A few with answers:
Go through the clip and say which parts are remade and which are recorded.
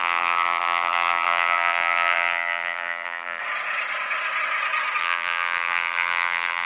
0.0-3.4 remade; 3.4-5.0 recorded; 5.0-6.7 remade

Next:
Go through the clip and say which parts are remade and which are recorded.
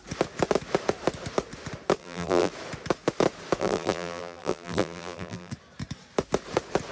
0.0-2.0 recorded; 2.0-2.5 remade; 2.5-3.6 recorded; 3.6-5.5 remade; 5.5-6.9 recorded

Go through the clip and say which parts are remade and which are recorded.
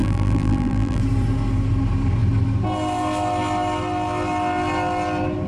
0.0-1.0 remade; 1.0-5.5 recorded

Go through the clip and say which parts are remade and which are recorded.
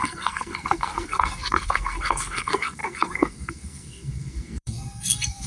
0.0-5.5 remade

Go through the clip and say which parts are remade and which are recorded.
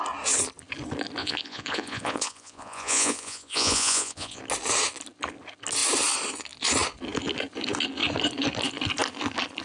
0.0-1.2 recorded; 1.2-4.4 remade; 4.4-9.6 recorded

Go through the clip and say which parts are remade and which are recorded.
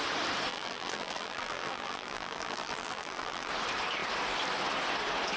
0.0-0.5 recorded; 0.5-3.5 remade; 3.5-5.4 recorded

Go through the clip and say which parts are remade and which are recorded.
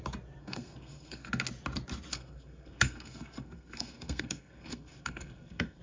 0.0-0.4 recorded; 0.4-1.3 remade; 1.3-2.1 recorded; 2.1-5.8 remade